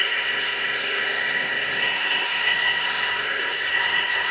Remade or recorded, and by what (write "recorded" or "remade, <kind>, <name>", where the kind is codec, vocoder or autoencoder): remade, codec, SNAC